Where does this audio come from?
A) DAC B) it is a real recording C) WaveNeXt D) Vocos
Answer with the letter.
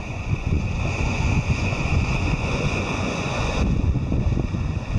D